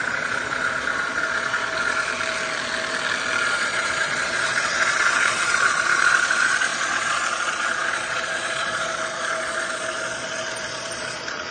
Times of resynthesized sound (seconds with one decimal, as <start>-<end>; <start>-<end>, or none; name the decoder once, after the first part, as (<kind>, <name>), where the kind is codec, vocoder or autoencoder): 0.0-2.1 (vocoder, Vocos); 3.4-11.5